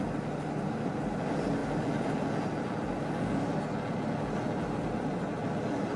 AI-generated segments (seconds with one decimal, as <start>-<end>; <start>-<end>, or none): none